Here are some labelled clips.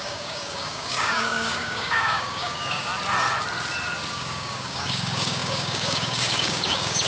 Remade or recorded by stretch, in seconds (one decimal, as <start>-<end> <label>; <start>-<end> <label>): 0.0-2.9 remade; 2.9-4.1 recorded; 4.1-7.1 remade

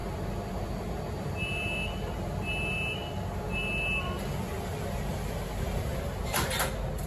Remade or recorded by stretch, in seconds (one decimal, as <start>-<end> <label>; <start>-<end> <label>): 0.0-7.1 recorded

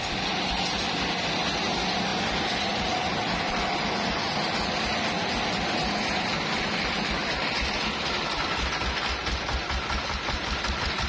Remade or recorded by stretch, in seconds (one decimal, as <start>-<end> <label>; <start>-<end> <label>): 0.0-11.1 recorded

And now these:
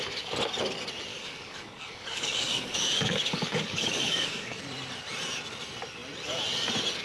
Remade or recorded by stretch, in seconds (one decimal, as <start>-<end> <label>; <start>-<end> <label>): 0.0-1.1 recorded; 1.1-4.6 remade; 4.6-7.0 recorded

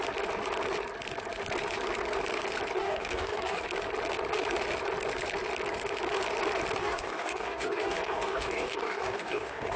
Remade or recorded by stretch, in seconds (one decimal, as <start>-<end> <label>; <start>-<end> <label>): 0.0-2.8 recorded; 2.8-3.6 remade; 3.6-6.8 recorded; 6.8-9.8 remade

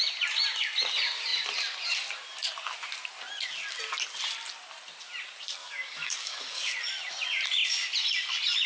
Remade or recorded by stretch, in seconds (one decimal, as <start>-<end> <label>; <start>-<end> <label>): 0.0-5.6 recorded; 5.6-6.7 remade; 6.7-8.7 recorded